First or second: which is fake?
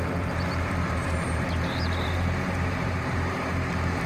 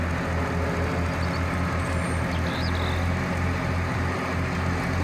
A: first